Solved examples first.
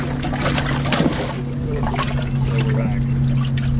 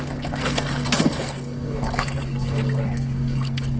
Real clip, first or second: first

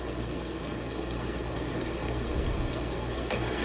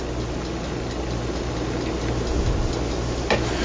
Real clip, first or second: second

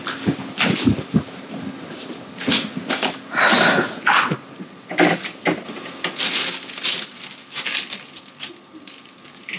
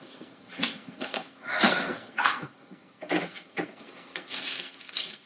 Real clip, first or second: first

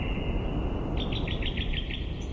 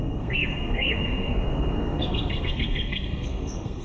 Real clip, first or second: first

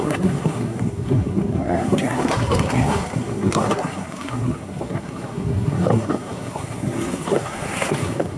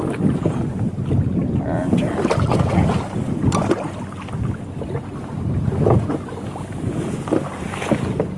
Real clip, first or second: second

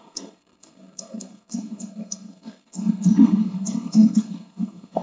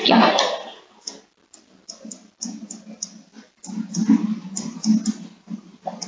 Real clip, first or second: second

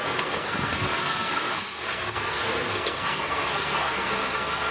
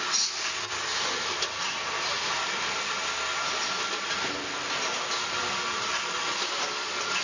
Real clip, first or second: second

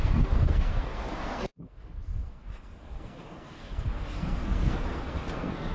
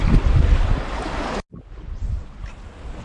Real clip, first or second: second